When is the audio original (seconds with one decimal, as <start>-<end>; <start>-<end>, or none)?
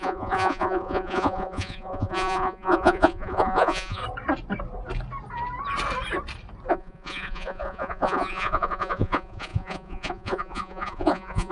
4.0-6.7